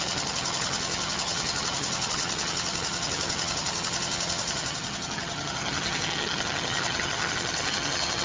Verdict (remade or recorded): remade